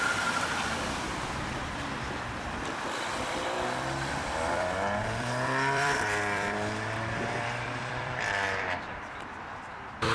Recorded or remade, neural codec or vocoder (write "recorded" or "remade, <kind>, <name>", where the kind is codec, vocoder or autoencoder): remade, vocoder, BigVGAN v2